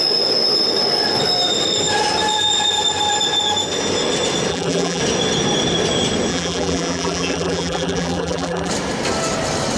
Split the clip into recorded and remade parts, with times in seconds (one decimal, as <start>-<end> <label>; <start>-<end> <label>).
0.0-4.5 recorded; 4.5-5.0 remade; 5.0-6.3 recorded; 6.3-8.7 remade; 8.7-9.8 recorded